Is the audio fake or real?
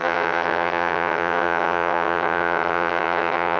fake